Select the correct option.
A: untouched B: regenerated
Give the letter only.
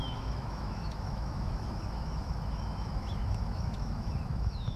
B